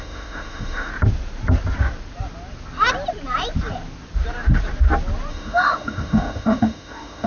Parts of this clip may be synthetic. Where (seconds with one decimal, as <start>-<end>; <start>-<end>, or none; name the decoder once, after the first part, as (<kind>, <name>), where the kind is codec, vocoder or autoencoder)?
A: 0.0-0.9 (autoencoder, DAC-VAE); 5.3-7.3